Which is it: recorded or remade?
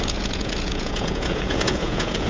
remade